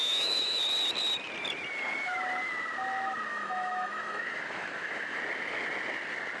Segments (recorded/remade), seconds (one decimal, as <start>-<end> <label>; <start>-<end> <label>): 0.0-0.6 remade; 0.6-3.3 recorded; 3.3-5.2 remade; 5.2-6.4 recorded